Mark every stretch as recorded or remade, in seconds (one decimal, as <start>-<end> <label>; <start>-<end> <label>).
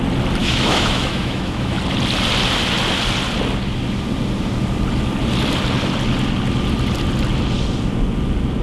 0.0-0.4 recorded; 0.4-1.8 remade; 1.8-8.6 recorded